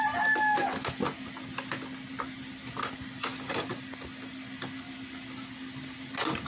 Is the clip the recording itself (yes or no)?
yes